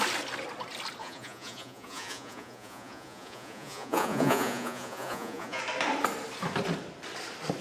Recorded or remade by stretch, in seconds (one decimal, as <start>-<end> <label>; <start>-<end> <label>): 0.0-1.0 recorded; 1.0-5.6 remade; 5.6-7.6 recorded